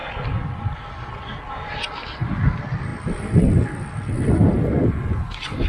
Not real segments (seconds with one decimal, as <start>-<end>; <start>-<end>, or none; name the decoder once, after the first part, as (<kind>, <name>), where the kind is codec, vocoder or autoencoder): none